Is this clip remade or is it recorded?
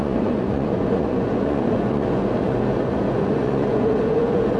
remade